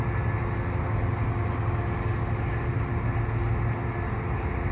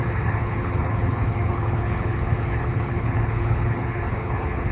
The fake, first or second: second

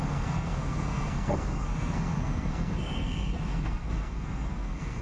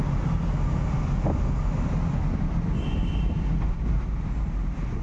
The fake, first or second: first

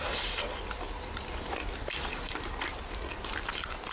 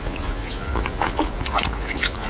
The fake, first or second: second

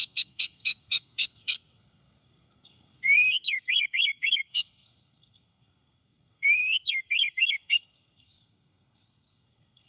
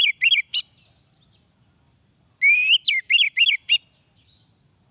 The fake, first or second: first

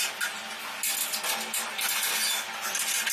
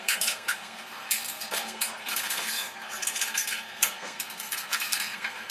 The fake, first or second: second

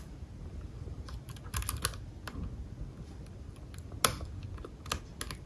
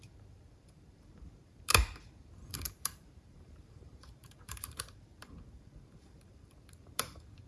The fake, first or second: second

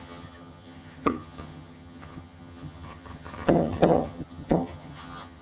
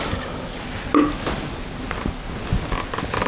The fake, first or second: first